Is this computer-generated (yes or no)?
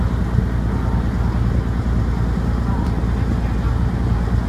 no